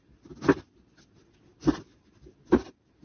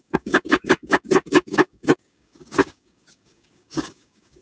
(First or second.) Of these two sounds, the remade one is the second